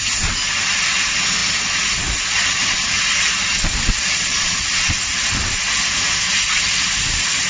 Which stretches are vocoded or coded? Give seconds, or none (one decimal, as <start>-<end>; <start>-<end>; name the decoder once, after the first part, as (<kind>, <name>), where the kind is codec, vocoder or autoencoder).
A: none